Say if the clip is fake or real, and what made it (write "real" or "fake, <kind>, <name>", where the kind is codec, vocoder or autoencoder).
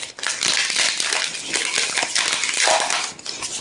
real